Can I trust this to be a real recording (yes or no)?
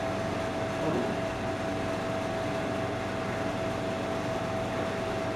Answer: yes